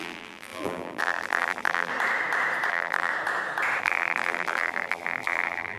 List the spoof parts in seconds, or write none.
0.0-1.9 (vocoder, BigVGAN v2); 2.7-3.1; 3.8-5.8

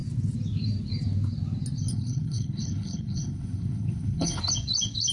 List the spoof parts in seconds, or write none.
1.9-4.4 (codec, HILCodec)

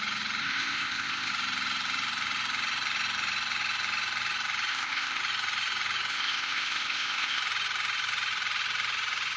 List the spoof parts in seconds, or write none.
0.4-1.3 (codec, ZipCodec); 4.7-5.2; 6.1-7.4

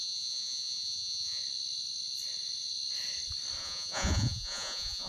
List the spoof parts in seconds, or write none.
0.0-1.4 (vocoder, Vocos); 3.6-5.1

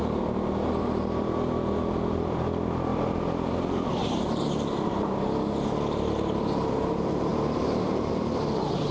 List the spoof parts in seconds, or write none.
2.9-4.2 (vocoder, BigVGAN v2); 7.3-8.1

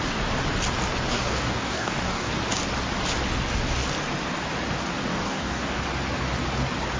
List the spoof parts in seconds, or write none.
1.1-2.3 (codec, DAC); 5.1-5.8

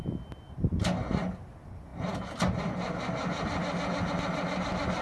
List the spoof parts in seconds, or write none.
none